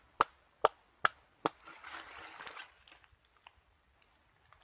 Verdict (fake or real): real